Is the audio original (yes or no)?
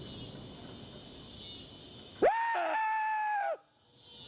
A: yes